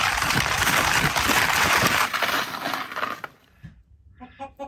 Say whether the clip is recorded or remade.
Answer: recorded